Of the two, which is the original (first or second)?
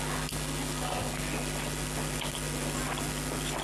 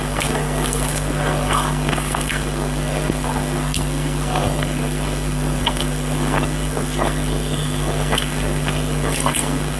first